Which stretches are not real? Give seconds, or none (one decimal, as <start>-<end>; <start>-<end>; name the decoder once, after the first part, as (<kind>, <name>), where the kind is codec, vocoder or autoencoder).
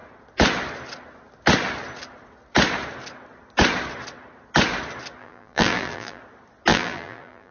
5.2-6.2 (vocoder, BigVGAN v2); 6.7-7.5